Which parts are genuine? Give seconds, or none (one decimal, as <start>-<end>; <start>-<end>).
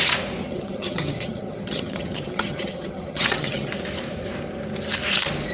0.0-0.4; 3.7-5.5